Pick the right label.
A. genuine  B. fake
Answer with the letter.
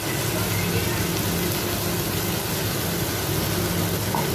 A